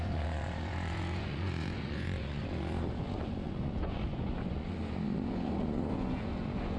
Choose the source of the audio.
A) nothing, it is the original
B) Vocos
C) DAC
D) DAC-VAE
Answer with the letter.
B